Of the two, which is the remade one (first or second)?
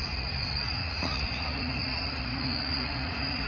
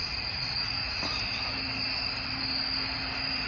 first